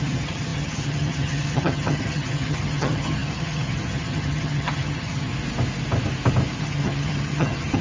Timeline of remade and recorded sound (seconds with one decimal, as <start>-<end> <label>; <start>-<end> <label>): 0.0-5.3 remade; 5.3-6.6 recorded; 6.6-7.8 remade